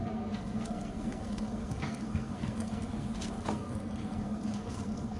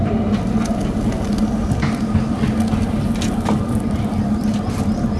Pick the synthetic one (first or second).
first